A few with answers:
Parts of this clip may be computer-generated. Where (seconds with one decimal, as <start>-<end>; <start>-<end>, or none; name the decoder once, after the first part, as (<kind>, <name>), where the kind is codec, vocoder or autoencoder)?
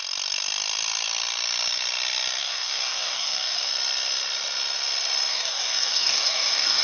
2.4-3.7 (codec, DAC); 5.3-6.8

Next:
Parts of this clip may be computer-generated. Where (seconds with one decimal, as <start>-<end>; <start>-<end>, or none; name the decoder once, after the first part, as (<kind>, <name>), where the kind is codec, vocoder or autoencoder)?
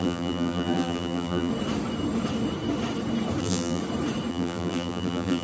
0.0-1.5 (vocoder, BigVGAN v2); 3.4-3.8; 4.3-5.4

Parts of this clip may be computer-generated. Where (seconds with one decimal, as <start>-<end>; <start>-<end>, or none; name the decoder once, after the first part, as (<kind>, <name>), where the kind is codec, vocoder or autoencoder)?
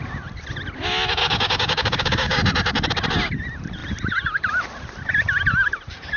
1.2-2.4 (codec, DAC)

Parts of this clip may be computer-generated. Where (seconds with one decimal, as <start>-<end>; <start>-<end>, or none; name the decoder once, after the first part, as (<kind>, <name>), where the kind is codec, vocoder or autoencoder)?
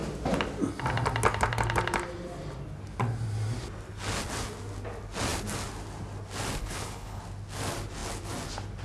6.6-7.2 (codec, HILCodec)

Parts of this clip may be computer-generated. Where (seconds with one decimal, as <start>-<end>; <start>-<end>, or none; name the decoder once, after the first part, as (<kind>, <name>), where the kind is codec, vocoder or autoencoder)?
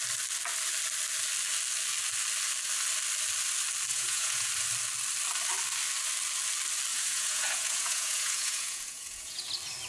3.9-4.5 (vocoder, Vocos); 6.9-9.5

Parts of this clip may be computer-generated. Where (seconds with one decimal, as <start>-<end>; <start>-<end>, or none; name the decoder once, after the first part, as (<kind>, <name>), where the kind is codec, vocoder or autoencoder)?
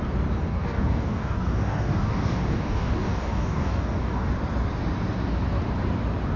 0.5-4.3 (codec, DAC)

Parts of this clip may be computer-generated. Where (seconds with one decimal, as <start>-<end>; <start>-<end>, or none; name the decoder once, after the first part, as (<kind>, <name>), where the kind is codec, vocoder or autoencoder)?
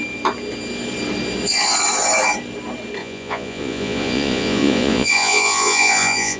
3.0-6.4 (vocoder, Vocos)